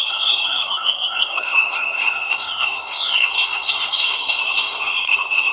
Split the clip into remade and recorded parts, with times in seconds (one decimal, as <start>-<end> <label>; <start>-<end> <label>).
0.0-5.5 remade